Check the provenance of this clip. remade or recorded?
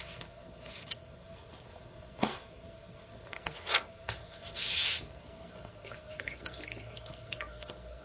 remade